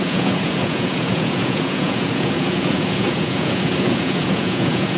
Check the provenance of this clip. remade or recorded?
remade